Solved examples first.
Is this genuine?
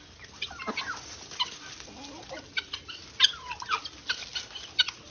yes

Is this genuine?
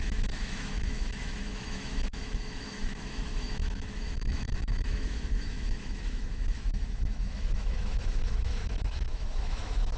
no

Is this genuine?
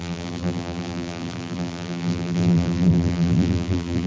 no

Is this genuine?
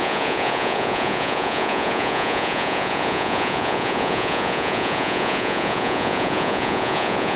no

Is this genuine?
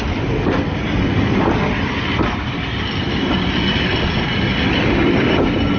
yes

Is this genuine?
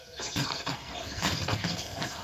no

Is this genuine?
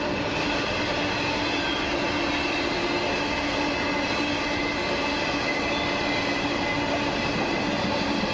yes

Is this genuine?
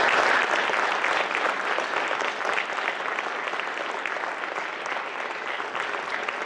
yes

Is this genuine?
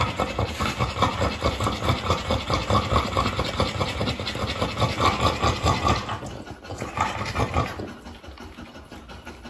yes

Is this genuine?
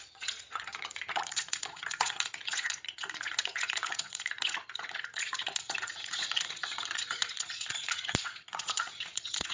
no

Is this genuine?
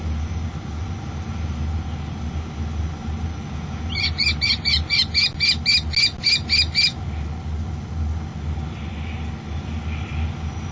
yes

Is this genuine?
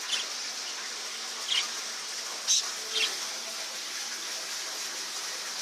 yes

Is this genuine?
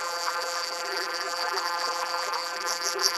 no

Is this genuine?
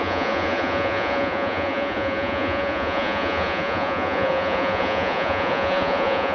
no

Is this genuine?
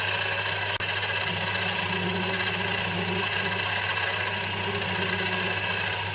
yes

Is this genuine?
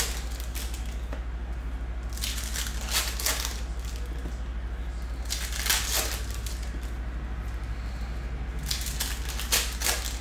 yes